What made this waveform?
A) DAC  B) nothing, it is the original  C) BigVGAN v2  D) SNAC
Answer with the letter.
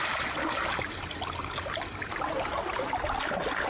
B